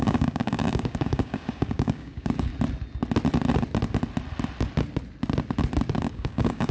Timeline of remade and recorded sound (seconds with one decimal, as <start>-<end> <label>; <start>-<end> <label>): 0.0-2.5 remade; 2.5-6.0 recorded; 6.0-6.7 remade

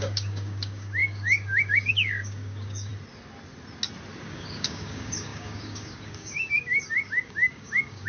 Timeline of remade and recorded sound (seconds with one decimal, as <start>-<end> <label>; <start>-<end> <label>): 0.0-2.9 remade; 2.9-4.2 recorded; 4.2-8.1 remade

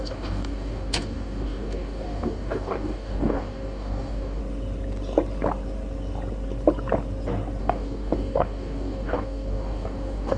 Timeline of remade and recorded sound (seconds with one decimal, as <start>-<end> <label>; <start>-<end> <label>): 0.0-4.4 remade; 4.4-7.6 recorded; 7.6-10.4 remade

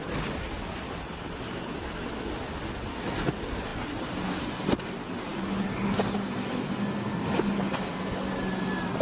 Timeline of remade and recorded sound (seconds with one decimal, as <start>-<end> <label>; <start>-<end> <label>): 0.0-9.0 recorded